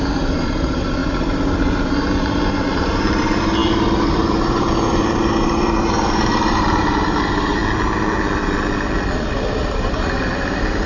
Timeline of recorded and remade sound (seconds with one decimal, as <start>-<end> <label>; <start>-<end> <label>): 0.0-7.6 remade; 7.6-9.4 recorded; 9.4-10.9 remade